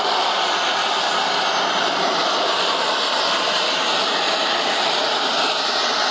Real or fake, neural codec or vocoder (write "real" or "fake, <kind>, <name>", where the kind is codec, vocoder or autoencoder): real